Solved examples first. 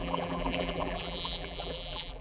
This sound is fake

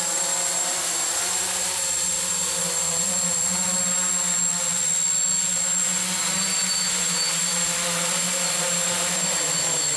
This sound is real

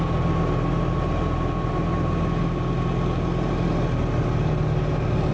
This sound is real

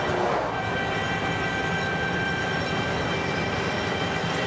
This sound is real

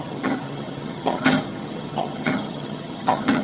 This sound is fake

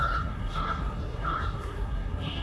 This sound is fake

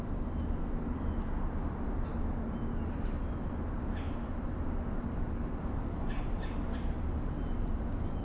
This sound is real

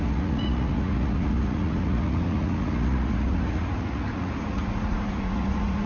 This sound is fake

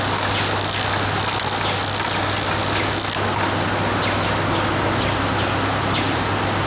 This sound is real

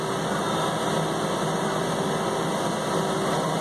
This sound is real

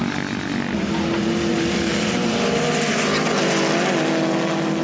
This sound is real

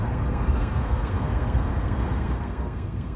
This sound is fake